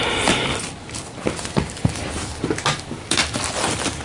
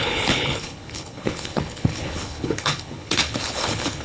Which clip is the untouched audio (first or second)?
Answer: first